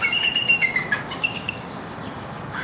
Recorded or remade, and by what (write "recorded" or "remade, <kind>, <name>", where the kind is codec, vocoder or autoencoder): remade, codec, DAC